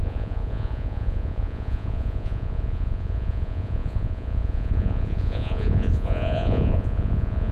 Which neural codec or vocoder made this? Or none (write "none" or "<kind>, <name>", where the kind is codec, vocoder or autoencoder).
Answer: vocoder, Vocos